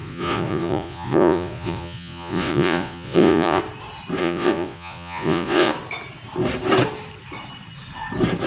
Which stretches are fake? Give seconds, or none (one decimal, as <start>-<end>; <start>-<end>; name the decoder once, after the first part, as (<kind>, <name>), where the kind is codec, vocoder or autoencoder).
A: 0.0-3.6 (vocoder, Vocos); 4.2-5.7